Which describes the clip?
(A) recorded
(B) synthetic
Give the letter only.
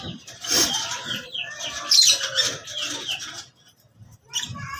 A